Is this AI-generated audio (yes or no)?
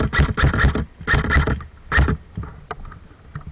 no